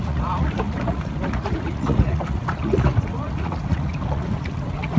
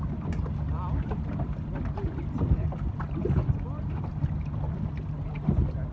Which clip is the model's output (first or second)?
first